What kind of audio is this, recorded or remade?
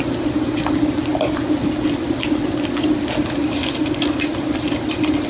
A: recorded